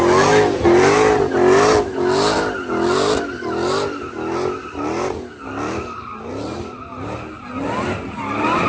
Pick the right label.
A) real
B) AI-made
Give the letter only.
A